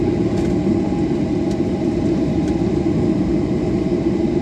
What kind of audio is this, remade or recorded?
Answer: recorded